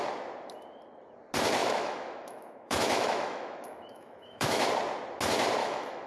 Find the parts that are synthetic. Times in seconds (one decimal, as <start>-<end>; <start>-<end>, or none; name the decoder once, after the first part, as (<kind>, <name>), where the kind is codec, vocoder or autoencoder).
1.6-4.7 (autoencoder, DAC-VAE); 5.6-6.1